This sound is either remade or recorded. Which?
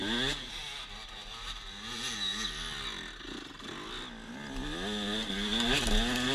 recorded